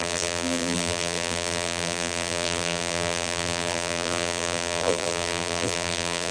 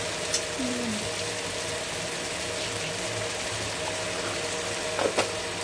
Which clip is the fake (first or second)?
first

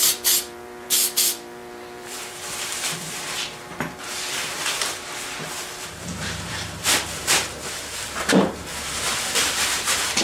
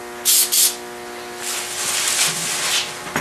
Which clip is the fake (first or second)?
first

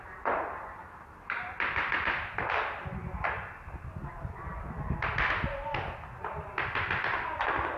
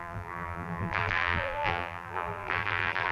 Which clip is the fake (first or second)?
second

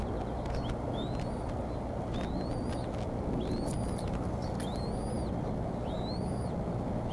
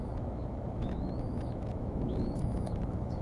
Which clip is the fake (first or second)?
second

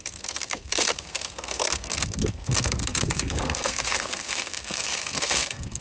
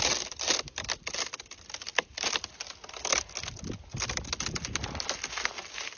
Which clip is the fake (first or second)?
first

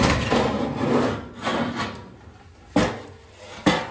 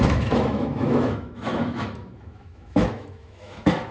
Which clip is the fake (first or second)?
second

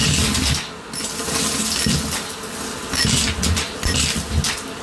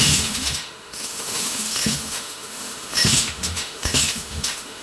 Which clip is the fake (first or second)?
second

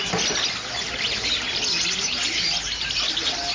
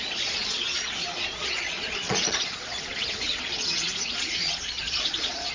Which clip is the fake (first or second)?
second